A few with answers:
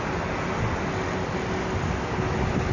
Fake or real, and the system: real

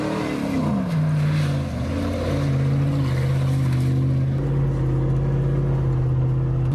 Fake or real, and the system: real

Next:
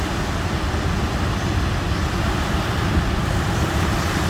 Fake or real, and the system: real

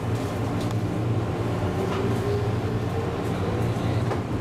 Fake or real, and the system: fake, vocoder, BigVGAN v2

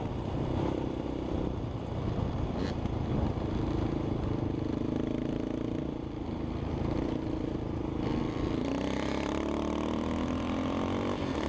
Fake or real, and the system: fake, vocoder, BigVGAN v2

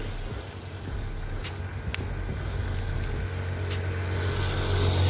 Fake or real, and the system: real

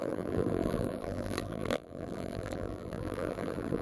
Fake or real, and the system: fake, vocoder, BigVGAN v2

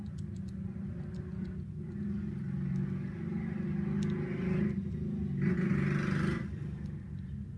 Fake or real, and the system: real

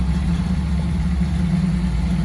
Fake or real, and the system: real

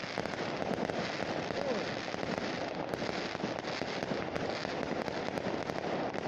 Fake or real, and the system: real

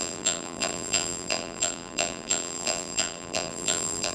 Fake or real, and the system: fake, vocoder, BigVGAN v2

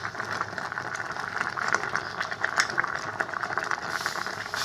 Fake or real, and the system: fake, vocoder, BigVGAN v2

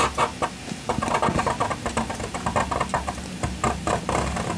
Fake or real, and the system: real